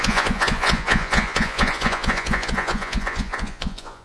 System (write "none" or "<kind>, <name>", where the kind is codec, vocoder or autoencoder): vocoder, Vocos